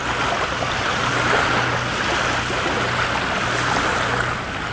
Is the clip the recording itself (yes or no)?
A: yes